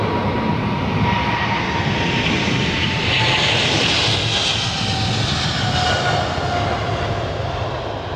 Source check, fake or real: real